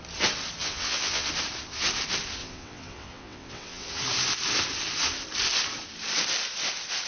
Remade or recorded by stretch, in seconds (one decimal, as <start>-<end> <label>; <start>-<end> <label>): 0.0-0.6 recorded; 0.6-1.3 remade; 1.3-2.4 recorded; 2.4-4.0 remade; 4.0-7.1 recorded